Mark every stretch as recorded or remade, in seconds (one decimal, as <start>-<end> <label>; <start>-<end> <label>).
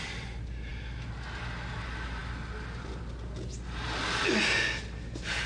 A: 0.0-5.5 recorded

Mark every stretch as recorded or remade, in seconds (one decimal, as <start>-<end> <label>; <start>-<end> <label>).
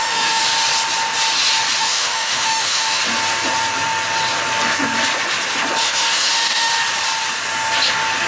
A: 0.0-0.4 remade; 0.4-1.8 recorded; 1.8-3.0 remade; 3.0-5.8 recorded; 5.8-6.7 remade; 6.7-8.3 recorded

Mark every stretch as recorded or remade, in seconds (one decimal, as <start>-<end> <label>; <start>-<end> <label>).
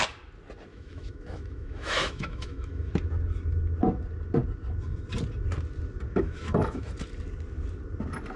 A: 0.0-0.7 recorded; 0.7-2.9 remade; 2.9-6.1 recorded; 6.1-6.9 remade; 6.9-8.4 recorded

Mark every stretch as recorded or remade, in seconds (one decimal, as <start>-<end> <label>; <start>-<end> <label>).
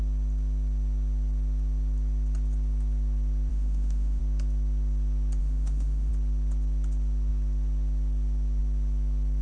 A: 0.0-3.5 recorded; 3.5-4.2 remade; 4.2-5.4 recorded; 5.4-6.1 remade; 6.1-9.4 recorded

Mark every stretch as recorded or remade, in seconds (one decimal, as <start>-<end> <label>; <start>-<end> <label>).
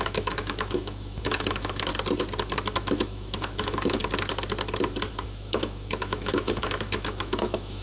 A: 0.0-1.9 remade; 1.9-2.8 recorded; 2.8-4.0 remade; 4.0-5.1 recorded; 5.1-7.8 remade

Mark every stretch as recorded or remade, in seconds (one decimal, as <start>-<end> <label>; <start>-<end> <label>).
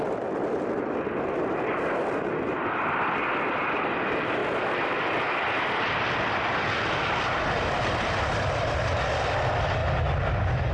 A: 0.0-10.7 recorded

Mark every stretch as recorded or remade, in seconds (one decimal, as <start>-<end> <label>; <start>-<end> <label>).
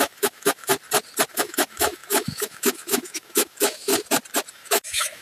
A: 0.0-0.7 remade; 0.7-1.3 recorded; 1.3-3.9 remade; 3.9-4.5 recorded; 4.5-5.2 remade